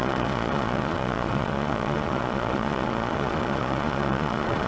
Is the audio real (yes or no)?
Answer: no